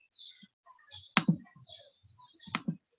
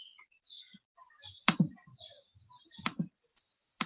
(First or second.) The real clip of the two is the first